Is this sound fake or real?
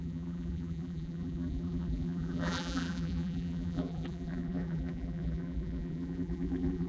fake